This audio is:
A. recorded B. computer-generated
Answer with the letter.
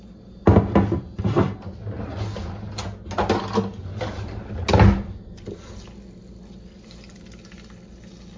A